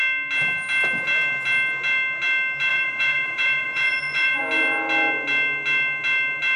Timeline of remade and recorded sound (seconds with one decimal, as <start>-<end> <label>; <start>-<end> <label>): 0.0-2.7 recorded; 2.7-4.4 remade; 4.4-6.6 recorded